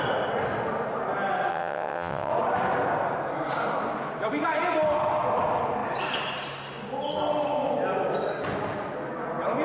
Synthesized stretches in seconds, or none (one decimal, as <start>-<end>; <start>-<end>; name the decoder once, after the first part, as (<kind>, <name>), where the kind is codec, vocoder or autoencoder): 1.5-2.3 (vocoder, WaveNeXt)